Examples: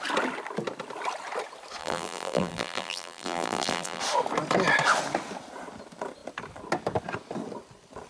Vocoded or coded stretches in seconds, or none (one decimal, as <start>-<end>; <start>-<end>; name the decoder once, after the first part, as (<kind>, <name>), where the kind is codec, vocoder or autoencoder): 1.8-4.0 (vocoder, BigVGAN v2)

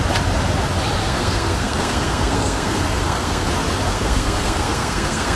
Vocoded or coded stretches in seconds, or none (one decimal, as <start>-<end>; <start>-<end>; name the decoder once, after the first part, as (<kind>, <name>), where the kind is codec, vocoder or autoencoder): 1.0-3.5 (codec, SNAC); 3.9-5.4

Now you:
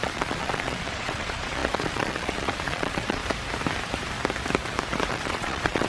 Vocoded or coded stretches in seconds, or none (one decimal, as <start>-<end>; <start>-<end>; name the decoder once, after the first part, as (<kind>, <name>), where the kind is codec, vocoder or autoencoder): 0.0-3.2 (vocoder, Vocos); 5.1-5.9